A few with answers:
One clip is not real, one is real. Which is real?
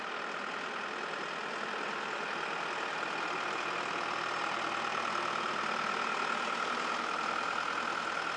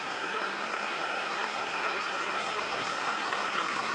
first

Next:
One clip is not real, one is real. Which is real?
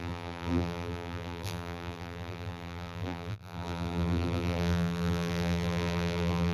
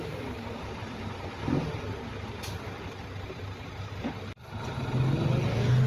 second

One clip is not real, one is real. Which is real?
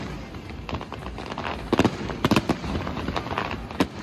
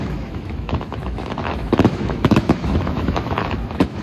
first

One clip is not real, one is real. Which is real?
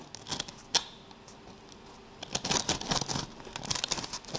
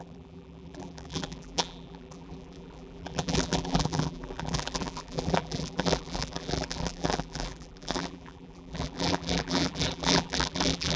first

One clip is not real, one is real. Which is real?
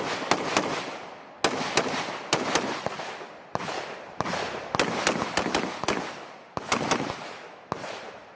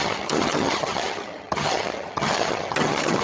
first